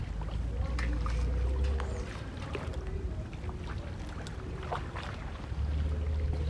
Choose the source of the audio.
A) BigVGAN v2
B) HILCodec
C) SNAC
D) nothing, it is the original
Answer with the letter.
D